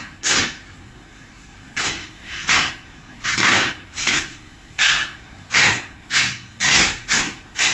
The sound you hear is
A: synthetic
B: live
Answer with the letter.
A